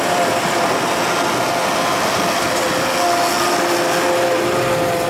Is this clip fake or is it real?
real